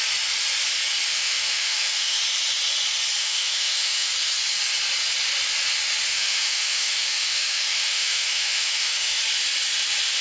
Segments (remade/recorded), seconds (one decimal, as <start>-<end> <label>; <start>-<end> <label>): 0.0-1.1 recorded; 1.1-2.2 remade; 2.2-3.2 recorded; 3.2-4.1 remade; 4.1-6.1 recorded; 6.1-9.2 remade; 9.2-10.2 recorded